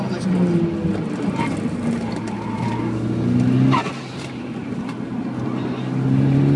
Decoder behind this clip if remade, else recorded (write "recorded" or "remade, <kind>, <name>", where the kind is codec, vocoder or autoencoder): recorded